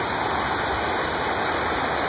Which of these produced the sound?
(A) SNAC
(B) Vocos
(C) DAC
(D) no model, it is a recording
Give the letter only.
D